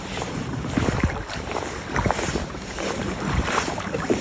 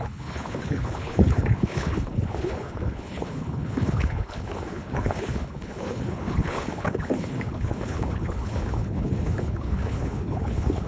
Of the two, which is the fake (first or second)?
second